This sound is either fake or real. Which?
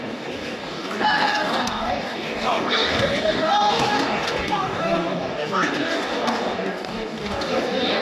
fake